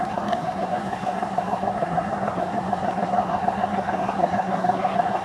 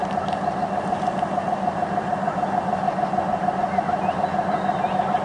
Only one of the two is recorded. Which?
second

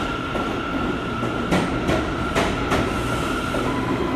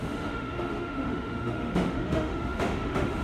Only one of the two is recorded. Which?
first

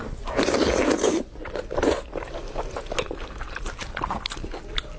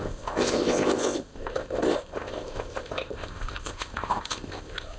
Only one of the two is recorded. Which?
first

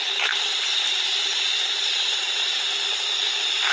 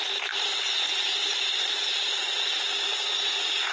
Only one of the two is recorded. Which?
second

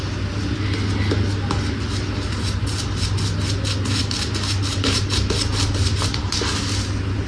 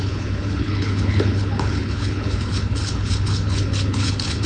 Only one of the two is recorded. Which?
first